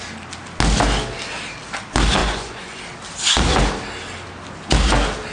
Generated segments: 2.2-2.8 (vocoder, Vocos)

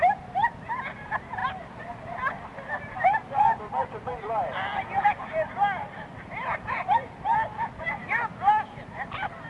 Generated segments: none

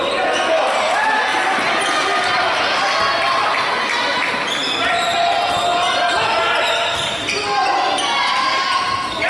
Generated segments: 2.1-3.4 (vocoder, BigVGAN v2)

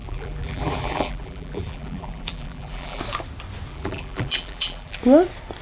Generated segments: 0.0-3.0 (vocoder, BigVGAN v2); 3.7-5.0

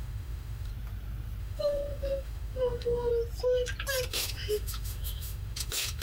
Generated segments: 0.0-0.7 (autoencoder, DAC-VAE); 1.4-3.1; 4.1-6.0